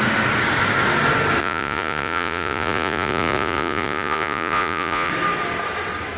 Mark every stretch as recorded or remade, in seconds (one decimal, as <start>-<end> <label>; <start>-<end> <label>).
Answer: 0.0-1.4 recorded; 1.4-5.1 remade; 5.1-6.2 recorded